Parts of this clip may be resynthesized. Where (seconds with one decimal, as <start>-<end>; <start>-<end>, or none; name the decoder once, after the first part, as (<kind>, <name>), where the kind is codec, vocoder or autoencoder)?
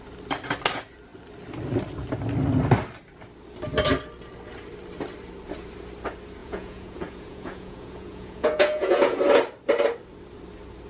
6.4-9.2 (vocoder, Vocos)